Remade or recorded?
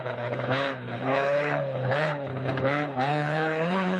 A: remade